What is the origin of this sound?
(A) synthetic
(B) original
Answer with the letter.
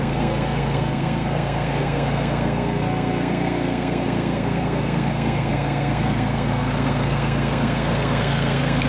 A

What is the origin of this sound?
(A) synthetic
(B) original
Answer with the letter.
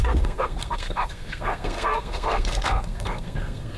A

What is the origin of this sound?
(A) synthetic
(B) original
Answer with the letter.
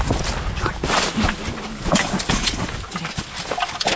B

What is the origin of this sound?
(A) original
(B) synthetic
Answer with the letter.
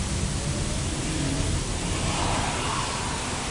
A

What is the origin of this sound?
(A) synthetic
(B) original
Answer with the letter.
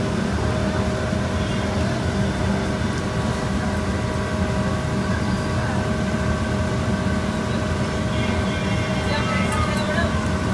B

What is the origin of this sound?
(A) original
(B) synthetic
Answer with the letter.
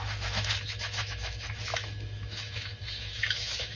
B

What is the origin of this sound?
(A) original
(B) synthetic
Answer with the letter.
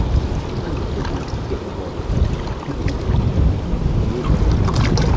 A